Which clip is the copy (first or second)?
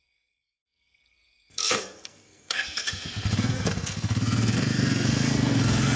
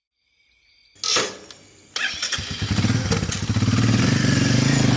first